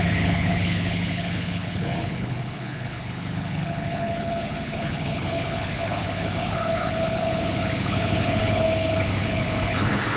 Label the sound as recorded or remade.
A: remade